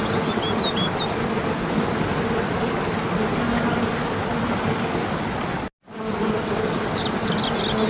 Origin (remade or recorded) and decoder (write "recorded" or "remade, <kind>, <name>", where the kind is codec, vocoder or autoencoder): recorded